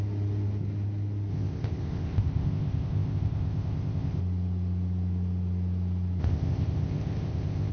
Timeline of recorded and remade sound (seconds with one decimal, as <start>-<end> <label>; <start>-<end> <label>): 0.0-1.3 recorded; 1.3-4.2 remade; 4.2-6.2 recorded; 6.2-7.7 remade